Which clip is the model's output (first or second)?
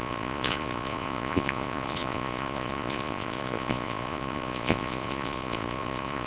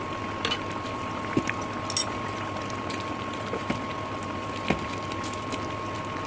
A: first